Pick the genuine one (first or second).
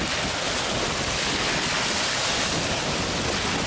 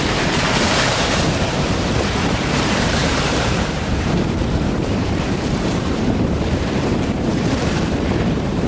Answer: first